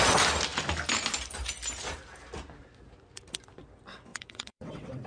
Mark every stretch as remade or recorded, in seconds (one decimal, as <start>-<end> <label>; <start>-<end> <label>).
0.0-4.1 recorded; 4.1-5.1 remade